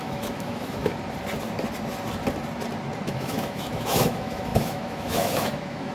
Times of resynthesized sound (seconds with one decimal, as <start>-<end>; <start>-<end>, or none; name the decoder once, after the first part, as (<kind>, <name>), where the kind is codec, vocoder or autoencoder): 0.0-0.9 (autoencoder, DAC-VAE); 3.1-5.9